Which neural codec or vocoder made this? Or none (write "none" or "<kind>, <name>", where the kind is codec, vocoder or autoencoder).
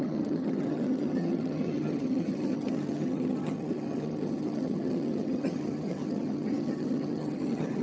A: vocoder, HiFi-GAN